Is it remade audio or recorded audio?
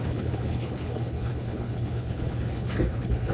remade